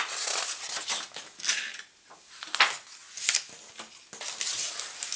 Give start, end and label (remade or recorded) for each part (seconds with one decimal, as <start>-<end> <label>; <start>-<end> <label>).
0.0-5.2 recorded